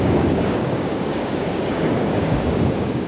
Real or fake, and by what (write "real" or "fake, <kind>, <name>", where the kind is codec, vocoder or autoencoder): fake, codec, DAC